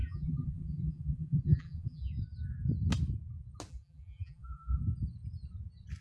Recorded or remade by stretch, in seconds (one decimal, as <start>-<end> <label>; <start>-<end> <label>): 0.0-2.1 remade; 2.1-3.7 recorded; 3.7-4.8 remade; 4.8-6.0 recorded